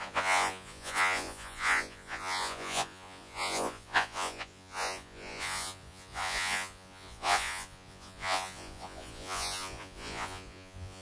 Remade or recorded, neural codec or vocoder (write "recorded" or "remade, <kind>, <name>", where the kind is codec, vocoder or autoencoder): remade, vocoder, Vocos